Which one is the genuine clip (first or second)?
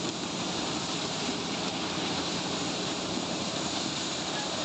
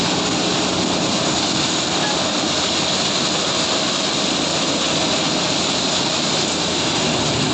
second